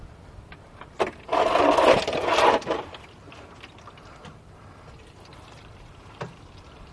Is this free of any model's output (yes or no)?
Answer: no